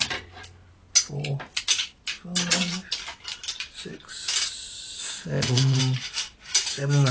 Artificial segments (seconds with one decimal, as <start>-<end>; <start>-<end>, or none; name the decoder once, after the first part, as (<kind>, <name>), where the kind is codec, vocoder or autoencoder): 5.0-5.8 (codec, ZipCodec)